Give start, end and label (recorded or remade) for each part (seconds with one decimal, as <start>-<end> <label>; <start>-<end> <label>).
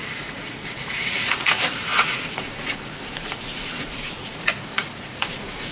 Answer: 0.0-5.7 remade